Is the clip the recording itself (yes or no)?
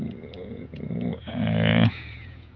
no